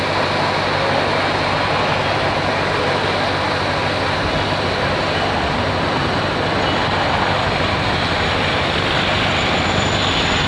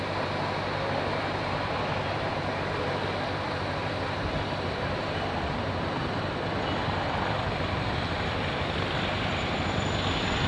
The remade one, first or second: second